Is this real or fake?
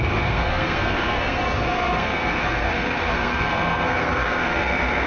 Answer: fake